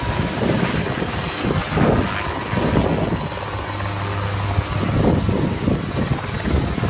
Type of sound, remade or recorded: recorded